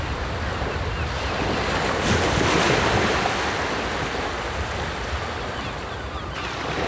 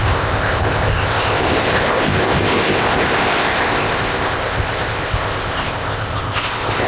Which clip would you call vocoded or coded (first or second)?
second